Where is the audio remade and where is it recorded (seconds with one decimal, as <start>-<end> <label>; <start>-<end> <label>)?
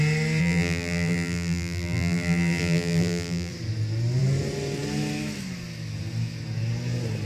0.0-0.4 recorded; 0.4-3.5 remade; 3.5-7.3 recorded